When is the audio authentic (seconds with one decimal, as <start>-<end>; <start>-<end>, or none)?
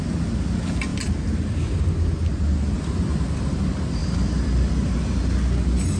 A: 0.0-2.5; 3.6-4.0; 4.7-6.0